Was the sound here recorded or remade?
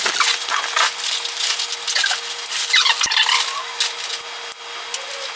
recorded